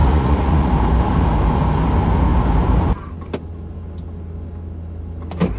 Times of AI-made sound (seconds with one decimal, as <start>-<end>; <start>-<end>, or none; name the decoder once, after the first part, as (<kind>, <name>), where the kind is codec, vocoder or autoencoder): 0.0-0.7 (vocoder, Vocos)